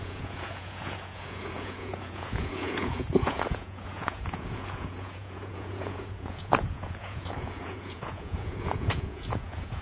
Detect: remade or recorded remade